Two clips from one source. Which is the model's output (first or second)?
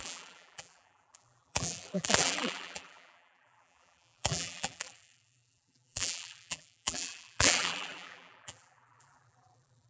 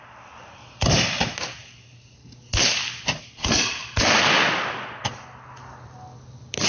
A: first